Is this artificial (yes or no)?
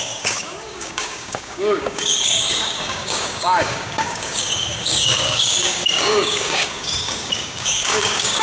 yes